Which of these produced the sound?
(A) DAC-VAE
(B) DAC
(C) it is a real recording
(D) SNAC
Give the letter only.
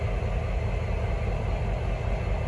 C